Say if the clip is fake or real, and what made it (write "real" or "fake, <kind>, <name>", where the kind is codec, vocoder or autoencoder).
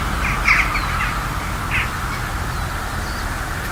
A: real